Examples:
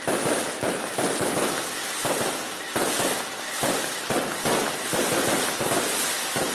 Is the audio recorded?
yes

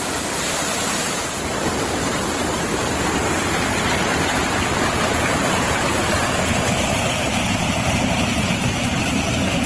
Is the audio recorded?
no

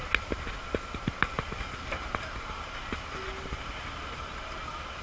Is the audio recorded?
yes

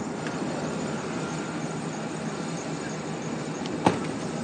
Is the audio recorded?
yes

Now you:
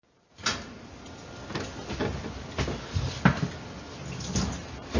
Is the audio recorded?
yes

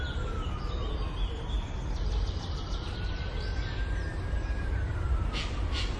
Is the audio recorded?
yes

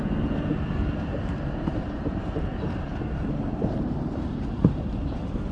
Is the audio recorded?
no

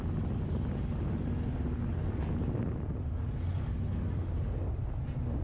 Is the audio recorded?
yes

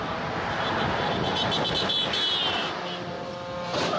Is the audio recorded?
yes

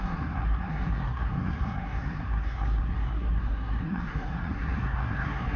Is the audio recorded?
no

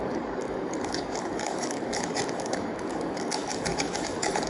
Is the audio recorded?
no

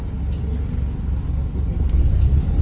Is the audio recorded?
yes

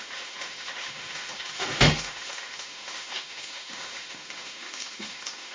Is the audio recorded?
no